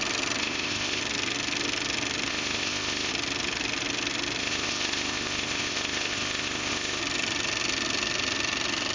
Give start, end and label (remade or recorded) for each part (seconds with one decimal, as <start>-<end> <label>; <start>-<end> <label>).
0.0-0.4 recorded; 0.4-1.0 remade; 1.0-2.3 recorded; 2.3-3.1 remade; 3.1-4.4 recorded; 4.4-7.0 remade; 7.0-8.9 recorded